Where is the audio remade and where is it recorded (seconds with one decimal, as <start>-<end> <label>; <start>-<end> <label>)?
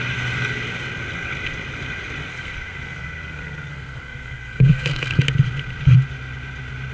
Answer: 0.0-2.3 recorded; 2.3-5.2 remade; 5.2-6.9 recorded